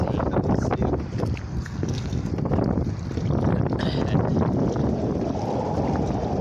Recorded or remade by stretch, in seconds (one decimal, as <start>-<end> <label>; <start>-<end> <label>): 0.0-1.5 recorded; 1.5-2.3 remade; 2.3-6.4 recorded